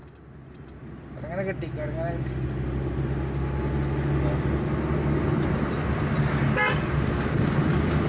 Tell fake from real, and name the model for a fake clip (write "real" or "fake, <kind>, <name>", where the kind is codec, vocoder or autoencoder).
real